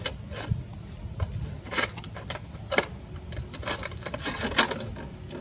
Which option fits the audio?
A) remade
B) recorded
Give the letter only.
B